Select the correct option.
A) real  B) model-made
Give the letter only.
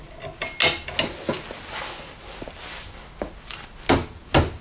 A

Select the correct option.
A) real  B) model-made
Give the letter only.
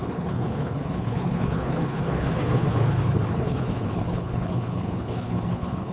B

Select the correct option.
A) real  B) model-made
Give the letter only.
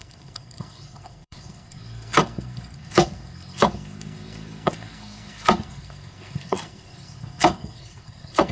B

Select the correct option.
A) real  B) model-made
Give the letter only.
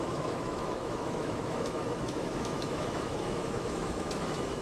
B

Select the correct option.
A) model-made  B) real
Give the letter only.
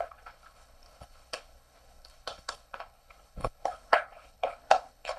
A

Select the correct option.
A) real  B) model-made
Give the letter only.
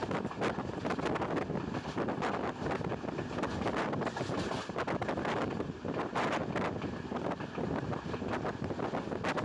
A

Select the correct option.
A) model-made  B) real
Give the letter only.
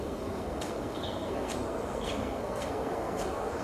A